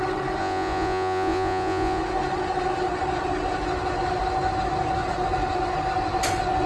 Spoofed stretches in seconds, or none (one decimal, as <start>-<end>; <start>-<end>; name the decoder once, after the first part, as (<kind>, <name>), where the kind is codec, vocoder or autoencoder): 0.4-2.0 (vocoder, Vocos)